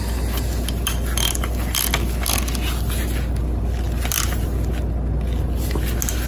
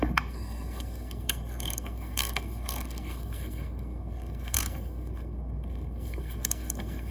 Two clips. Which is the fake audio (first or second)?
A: second